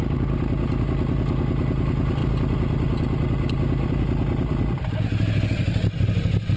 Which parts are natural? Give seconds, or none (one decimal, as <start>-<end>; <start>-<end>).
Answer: 0.0-6.6